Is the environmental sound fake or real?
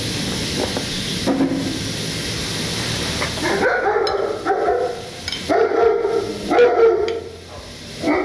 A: real